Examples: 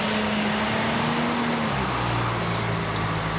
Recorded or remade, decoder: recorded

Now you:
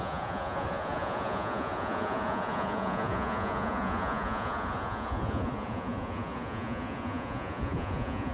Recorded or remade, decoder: remade, vocoder, Vocos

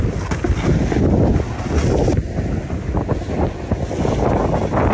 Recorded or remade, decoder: recorded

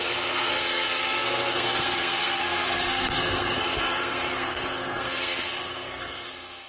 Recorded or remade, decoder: remade, codec, SNAC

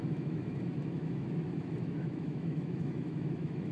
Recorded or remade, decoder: remade, autoencoder, DAC-VAE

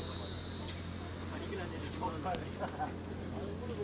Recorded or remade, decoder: recorded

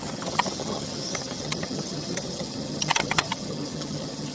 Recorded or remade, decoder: remade, vocoder, HiFi-GAN